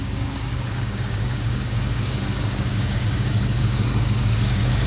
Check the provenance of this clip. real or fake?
fake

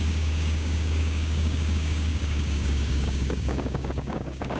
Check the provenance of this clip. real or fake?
fake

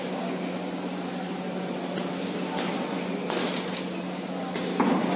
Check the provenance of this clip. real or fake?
real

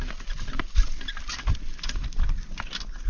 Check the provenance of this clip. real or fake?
real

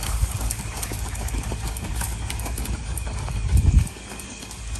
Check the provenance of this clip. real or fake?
fake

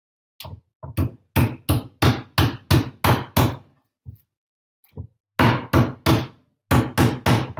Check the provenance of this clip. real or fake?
real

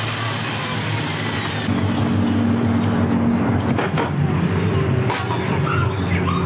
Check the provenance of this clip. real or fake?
real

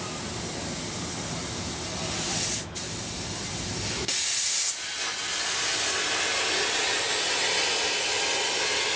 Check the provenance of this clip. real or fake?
real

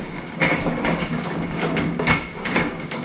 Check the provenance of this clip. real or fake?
fake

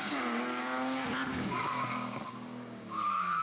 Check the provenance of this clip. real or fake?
fake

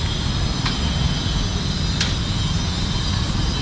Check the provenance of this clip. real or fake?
real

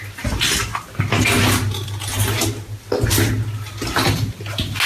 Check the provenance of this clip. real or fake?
real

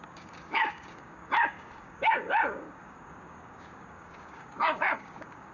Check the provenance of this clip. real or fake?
fake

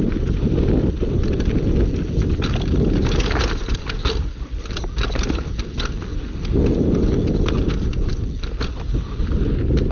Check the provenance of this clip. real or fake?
real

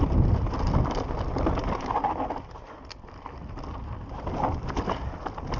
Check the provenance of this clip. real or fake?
real